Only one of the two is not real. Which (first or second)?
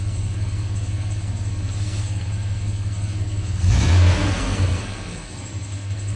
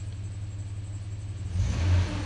first